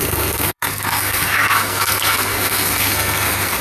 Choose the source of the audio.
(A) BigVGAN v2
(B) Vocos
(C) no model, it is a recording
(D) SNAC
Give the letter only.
D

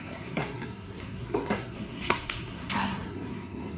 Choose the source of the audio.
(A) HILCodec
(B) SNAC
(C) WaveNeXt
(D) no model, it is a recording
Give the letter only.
B